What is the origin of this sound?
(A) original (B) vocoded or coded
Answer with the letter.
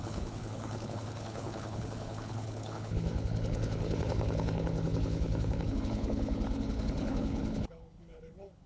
B